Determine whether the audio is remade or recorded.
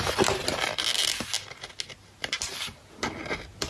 recorded